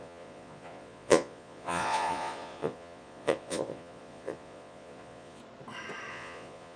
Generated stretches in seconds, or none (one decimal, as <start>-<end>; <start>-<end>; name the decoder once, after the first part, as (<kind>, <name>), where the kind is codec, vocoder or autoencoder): 0.0-5.4 (vocoder, Vocos); 6.1-6.8